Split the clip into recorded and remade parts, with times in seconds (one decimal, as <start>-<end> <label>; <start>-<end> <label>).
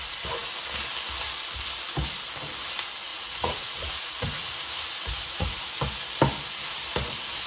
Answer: 0.0-3.1 recorded; 3.1-5.6 remade; 5.6-7.5 recorded